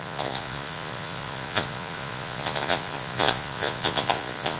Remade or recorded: remade